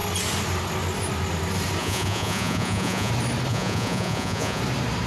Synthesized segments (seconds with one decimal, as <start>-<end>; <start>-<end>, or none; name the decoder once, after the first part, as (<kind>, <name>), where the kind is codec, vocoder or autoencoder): 1.8-3.1 (vocoder, Vocos); 3.5-4.6